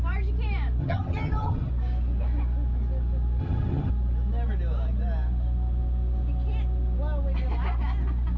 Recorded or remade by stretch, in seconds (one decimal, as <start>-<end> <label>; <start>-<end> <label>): 0.0-0.8 recorded; 0.8-1.7 remade; 1.7-3.4 recorded; 3.4-3.9 remade; 3.9-8.4 recorded